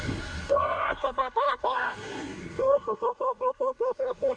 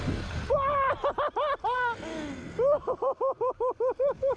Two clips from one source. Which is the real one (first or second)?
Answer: second